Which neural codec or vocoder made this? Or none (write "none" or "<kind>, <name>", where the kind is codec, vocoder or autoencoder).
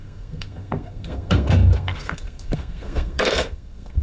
codec, SNAC